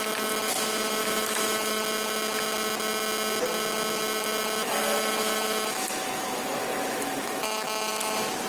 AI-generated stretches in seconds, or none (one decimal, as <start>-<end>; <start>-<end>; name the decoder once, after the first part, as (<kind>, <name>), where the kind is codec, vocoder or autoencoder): 1.0-1.8 (autoencoder, DAC-VAE); 4.6-7.9